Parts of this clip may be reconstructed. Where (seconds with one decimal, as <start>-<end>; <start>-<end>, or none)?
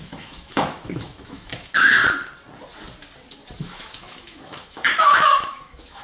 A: 0.0-2.0; 3.6-6.0